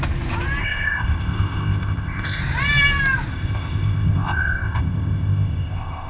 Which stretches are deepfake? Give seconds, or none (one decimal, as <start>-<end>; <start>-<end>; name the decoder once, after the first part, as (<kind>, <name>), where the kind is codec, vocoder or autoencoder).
0.6-2.4 (codec, ZipCodec); 3.3-6.1